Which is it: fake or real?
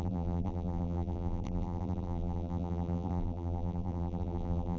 fake